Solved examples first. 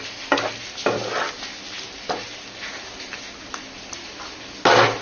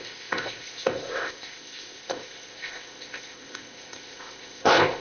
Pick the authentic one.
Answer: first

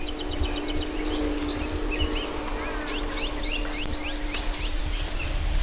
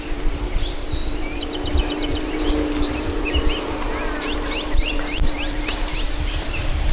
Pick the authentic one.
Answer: first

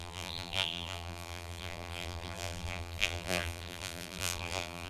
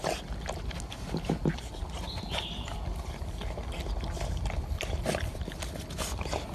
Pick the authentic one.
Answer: second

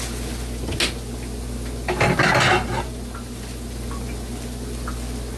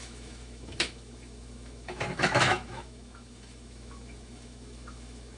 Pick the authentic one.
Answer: first